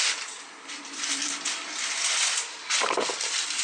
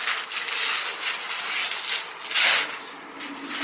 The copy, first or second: first